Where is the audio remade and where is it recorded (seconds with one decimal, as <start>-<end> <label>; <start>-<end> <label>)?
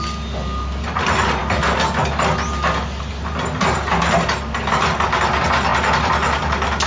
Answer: 0.0-6.9 recorded